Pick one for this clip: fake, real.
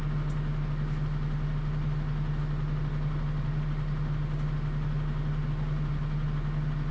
real